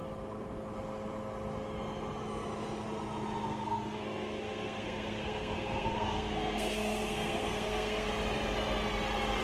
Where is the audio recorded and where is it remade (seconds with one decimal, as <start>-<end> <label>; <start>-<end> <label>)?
0.0-3.5 recorded; 3.5-8.1 remade; 8.1-9.4 recorded